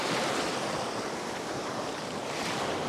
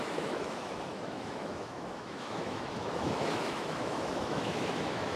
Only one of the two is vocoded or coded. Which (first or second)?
second